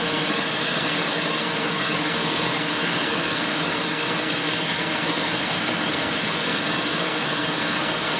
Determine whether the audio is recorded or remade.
remade